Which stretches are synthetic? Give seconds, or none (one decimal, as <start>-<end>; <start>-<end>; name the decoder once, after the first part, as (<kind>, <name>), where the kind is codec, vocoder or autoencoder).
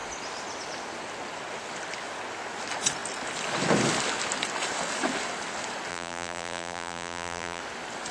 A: 5.9-7.6 (vocoder, BigVGAN v2)